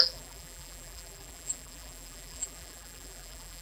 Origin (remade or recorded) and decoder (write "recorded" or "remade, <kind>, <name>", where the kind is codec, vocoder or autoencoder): remade, vocoder, BigVGAN v2